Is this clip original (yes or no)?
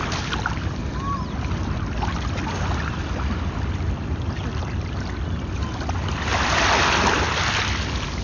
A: yes